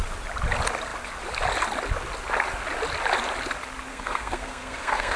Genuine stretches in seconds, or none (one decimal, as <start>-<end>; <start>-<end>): 0.0-3.9